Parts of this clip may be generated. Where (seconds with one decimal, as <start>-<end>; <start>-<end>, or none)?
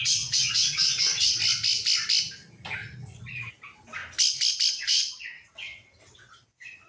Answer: 0.0-1.4; 4.7-6.9